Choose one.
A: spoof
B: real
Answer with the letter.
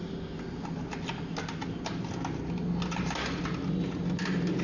B